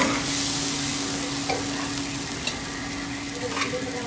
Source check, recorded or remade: recorded